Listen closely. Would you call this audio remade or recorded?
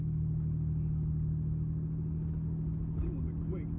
recorded